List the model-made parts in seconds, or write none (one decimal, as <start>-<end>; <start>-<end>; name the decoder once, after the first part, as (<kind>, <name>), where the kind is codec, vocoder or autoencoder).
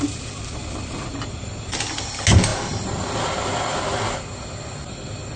none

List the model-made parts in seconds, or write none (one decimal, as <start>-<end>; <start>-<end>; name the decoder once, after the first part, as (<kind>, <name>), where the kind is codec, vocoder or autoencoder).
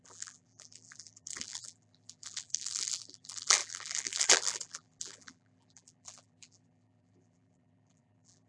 0.0-8.5 (vocoder, BigVGAN v2)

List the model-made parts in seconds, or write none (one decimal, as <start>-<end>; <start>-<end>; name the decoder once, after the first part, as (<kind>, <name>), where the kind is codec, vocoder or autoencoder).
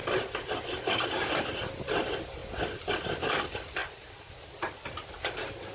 1.6-3.8 (vocoder, BigVGAN v2); 5.1-5.7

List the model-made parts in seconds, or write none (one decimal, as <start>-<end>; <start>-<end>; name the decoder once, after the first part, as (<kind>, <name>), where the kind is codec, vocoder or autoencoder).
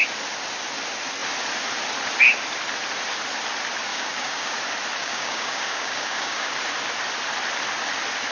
3.9-4.5 (codec, DAC); 5.0-6.5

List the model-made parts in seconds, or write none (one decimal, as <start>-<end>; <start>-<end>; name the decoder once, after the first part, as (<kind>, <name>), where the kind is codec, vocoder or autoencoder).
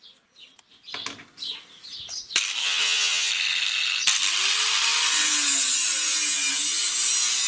2.6-3.3 (vocoder, HiFi-GAN)